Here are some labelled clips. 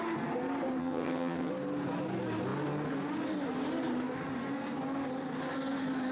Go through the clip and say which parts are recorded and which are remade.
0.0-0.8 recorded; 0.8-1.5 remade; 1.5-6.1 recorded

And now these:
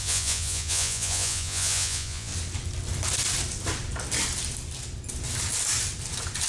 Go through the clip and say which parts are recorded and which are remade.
0.0-2.3 remade; 2.3-6.5 recorded

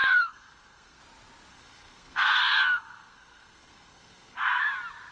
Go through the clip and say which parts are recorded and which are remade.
0.0-1.0 remade; 1.0-1.5 recorded; 1.5-4.6 remade; 4.6-5.1 recorded

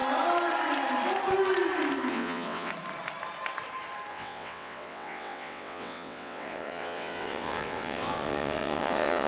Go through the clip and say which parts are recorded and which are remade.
0.0-2.1 recorded; 2.1-2.7 remade; 2.7-4.1 recorded; 4.1-9.3 remade

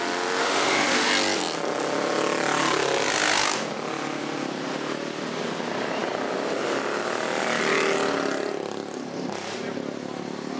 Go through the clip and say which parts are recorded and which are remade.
0.0-0.4 recorded; 0.4-1.1 remade; 1.1-10.6 recorded